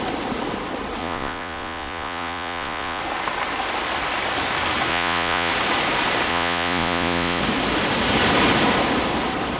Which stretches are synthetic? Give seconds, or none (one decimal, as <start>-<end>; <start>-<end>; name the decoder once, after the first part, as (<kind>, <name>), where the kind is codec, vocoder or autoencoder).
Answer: 1.0-3.0 (vocoder, Vocos); 4.9-5.5; 6.3-7.4